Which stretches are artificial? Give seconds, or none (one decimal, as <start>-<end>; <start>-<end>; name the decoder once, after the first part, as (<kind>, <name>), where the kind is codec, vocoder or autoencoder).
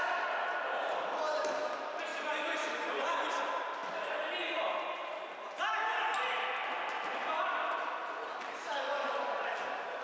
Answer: none